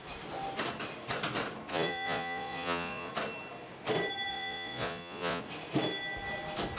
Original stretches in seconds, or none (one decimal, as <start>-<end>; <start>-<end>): 0.0-1.7; 3.1-4.3; 5.4-6.8